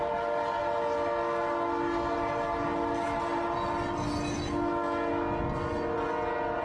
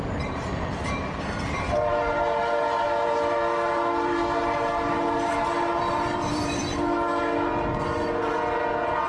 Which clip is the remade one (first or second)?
second